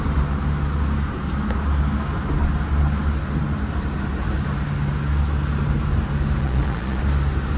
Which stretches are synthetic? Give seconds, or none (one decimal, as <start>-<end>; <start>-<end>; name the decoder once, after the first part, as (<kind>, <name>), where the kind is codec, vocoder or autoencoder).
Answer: 6.4-7.0 (vocoder, Vocos)